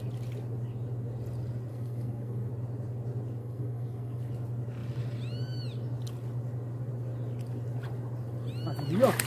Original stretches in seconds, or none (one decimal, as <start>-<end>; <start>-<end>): 0.0-1.7; 2.5-3.4; 4.2-9.3